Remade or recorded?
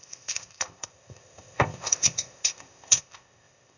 remade